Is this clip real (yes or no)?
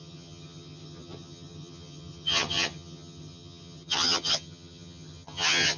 no